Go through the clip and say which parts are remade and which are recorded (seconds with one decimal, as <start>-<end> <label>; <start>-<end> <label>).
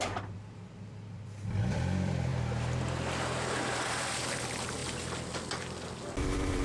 0.0-4.8 remade; 4.8-6.1 recorded; 6.1-6.6 remade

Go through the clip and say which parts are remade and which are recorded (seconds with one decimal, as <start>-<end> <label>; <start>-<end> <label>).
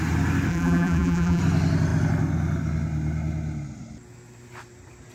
0.0-0.5 recorded; 0.5-1.4 remade; 1.4-5.1 recorded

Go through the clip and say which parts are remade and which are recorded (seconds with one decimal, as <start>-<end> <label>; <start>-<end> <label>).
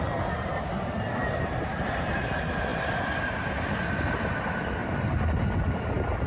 0.0-6.3 recorded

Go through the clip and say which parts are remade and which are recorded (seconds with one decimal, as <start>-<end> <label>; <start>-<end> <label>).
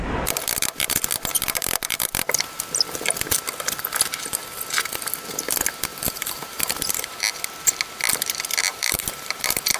0.0-5.9 recorded; 5.9-7.3 remade; 7.3-8.7 recorded; 8.7-9.8 remade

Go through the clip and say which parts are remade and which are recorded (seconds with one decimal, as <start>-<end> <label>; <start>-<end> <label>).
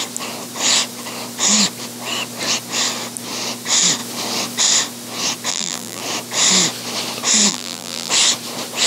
0.0-5.5 recorded; 5.5-6.0 remade; 6.0-7.5 recorded; 7.5-8.1 remade; 8.1-8.9 recorded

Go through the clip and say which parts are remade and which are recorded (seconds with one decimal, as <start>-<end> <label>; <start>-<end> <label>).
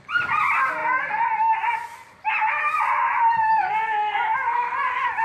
0.0-5.2 recorded